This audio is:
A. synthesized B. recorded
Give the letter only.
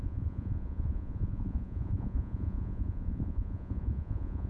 A